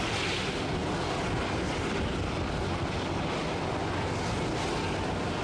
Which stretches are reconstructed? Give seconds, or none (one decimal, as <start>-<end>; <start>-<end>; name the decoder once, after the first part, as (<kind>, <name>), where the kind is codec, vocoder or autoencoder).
0.0-2.1 (vocoder, BigVGAN v2)